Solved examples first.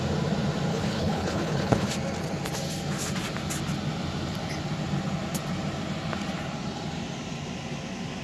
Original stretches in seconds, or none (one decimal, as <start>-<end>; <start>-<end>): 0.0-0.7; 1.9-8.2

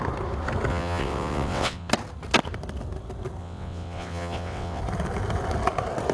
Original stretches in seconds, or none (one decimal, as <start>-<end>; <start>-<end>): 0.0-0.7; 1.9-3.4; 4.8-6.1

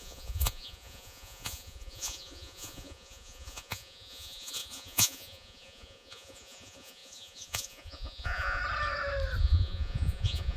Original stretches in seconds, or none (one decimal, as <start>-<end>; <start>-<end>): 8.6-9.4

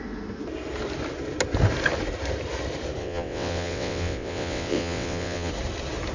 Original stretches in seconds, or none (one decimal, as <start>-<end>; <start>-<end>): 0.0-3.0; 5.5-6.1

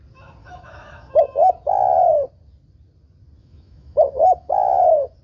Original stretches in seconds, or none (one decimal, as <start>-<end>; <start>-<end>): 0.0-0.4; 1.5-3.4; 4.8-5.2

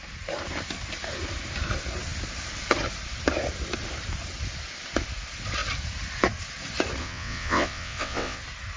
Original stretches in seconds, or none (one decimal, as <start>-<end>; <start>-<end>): 0.0-7.0; 8.4-8.8

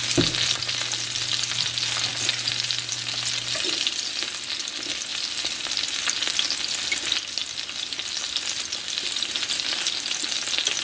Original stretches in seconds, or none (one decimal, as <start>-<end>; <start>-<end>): 0.0-5.1; 5.8-10.8